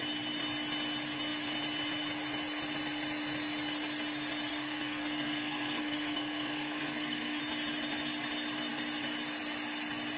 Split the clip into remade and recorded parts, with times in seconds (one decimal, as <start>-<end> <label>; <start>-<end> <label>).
0.0-4.5 recorded; 4.5-7.4 remade; 7.4-10.2 recorded